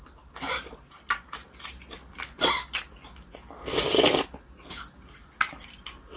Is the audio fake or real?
real